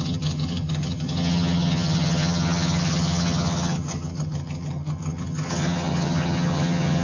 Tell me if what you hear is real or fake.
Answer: fake